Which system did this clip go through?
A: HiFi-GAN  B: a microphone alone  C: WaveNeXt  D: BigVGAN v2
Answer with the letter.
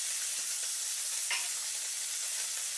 B